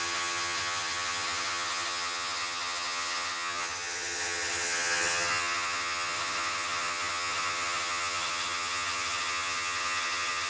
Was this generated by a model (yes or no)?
yes